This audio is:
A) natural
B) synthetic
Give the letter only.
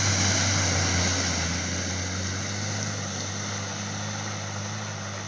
A